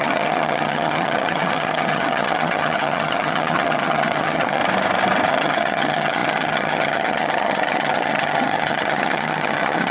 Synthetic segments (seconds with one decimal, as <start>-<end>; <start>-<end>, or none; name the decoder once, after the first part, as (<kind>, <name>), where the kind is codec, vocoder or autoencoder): 0.0-4.6 (vocoder, HiFi-GAN); 5.3-9.9